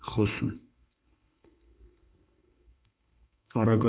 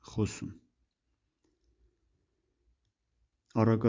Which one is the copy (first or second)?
first